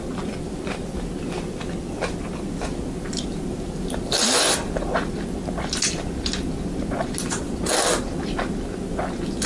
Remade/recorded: recorded